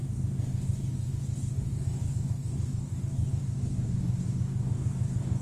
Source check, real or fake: fake